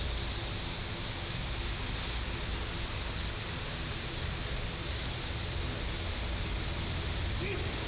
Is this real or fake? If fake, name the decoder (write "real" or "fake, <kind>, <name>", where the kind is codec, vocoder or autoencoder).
real